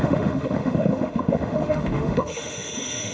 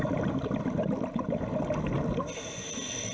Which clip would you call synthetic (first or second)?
first